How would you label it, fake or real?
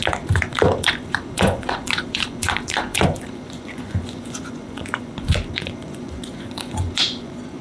fake